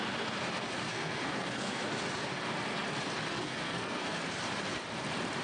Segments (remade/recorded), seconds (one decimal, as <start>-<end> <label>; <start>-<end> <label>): 0.0-0.9 recorded; 0.9-1.8 remade; 1.8-3.3 recorded; 3.3-4.2 remade; 4.2-5.4 recorded